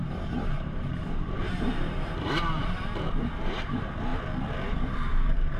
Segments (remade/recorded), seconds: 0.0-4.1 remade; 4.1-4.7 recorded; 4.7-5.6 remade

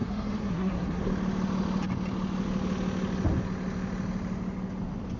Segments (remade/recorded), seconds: 0.0-1.0 remade; 1.0-5.2 recorded